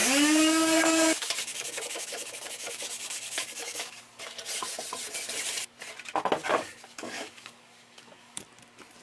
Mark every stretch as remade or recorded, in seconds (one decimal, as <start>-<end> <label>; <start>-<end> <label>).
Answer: 0.0-4.0 remade; 4.0-6.4 recorded; 6.4-8.4 remade; 8.4-9.0 recorded